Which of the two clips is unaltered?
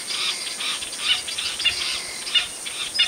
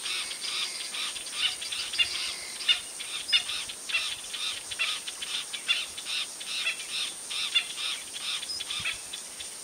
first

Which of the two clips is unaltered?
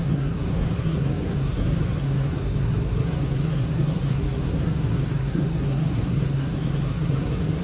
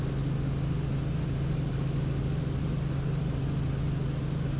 second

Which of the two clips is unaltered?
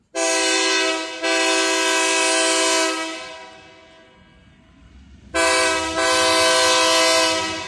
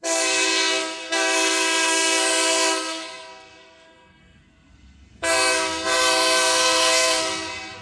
first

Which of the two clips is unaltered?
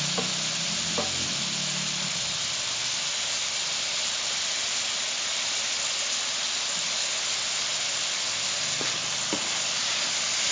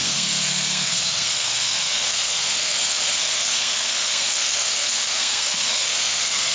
first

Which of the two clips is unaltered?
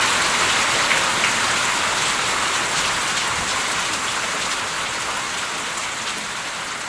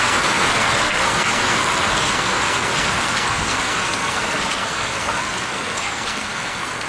first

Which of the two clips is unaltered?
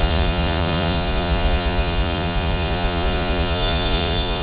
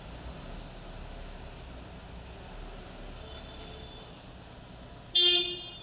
second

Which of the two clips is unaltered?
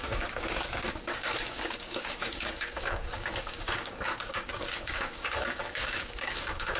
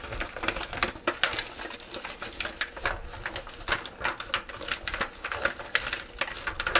second